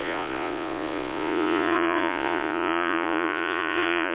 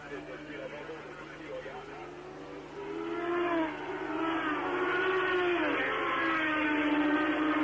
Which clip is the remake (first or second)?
first